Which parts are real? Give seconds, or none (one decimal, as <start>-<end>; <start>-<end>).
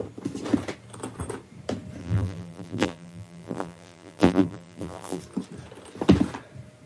0.0-2.0; 5.2-6.9